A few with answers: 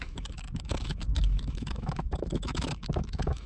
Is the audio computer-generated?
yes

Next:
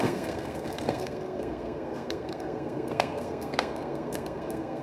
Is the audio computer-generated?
yes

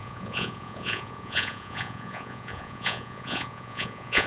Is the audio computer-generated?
yes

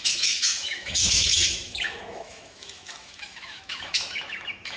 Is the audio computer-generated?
yes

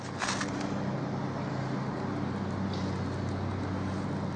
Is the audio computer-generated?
no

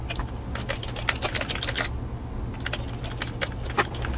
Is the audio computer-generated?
no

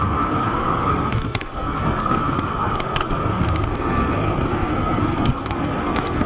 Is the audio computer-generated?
yes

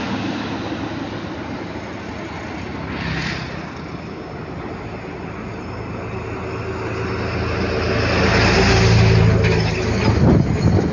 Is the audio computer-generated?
no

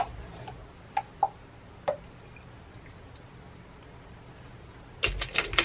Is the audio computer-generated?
no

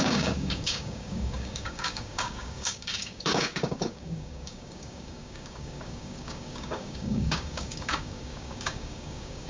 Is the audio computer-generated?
yes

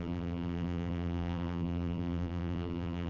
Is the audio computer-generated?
yes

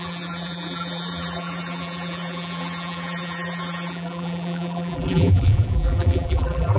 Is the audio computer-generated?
yes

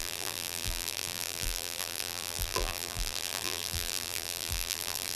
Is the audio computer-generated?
yes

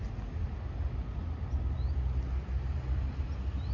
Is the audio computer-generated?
no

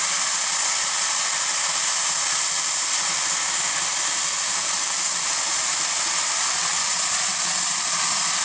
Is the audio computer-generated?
no